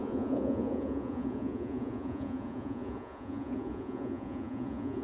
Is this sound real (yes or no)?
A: no